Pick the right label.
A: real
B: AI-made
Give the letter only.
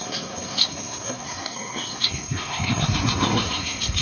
B